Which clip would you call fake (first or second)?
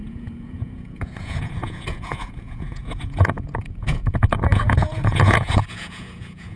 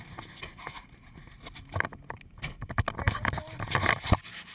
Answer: first